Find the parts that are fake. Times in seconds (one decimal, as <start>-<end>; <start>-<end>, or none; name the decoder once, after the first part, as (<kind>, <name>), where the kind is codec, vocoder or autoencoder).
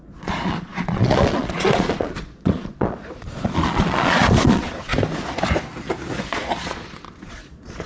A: 0.0-4.9 (vocoder, Vocos); 6.2-7.9